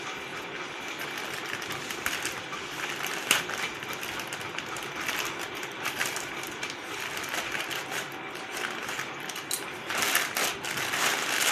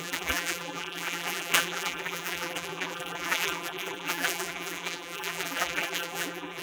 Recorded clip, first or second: first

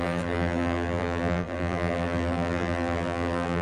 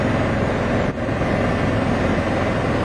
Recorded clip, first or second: second